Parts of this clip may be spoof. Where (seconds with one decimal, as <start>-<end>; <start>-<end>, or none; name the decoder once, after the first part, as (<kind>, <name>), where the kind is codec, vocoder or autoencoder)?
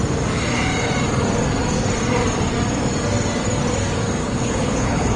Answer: 4.2-5.2 (codec, HILCodec)